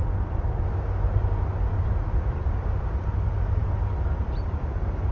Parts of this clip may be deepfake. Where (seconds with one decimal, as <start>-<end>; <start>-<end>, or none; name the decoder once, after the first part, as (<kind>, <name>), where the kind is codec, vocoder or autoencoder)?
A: none